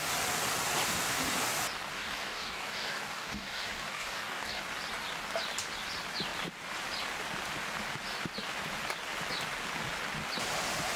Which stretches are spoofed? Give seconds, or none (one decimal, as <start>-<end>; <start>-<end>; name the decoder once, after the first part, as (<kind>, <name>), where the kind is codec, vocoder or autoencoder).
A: 1.9-4.6 (codec, DAC)